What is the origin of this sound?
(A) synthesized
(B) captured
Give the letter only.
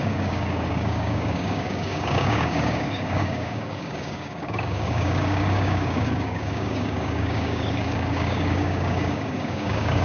A